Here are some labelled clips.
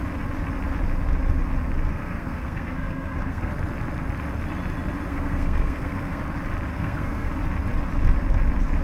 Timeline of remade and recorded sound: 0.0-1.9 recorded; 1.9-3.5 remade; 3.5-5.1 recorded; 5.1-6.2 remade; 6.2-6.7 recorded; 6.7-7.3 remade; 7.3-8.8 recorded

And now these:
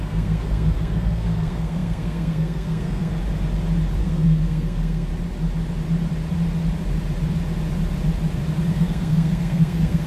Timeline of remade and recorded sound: 0.0-3.2 remade; 3.2-4.0 recorded; 4.0-5.1 remade; 5.1-8.7 recorded; 8.7-10.1 remade

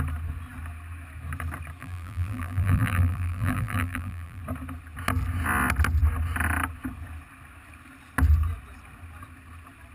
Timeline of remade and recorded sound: 0.0-1.8 recorded; 1.8-4.4 remade; 4.4-9.9 recorded

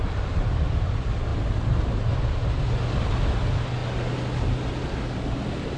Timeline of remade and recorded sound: 0.0-1.3 recorded; 1.3-2.2 remade; 2.2-5.8 recorded